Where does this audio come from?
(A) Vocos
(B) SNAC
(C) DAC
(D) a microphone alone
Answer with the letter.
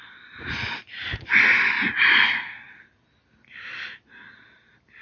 D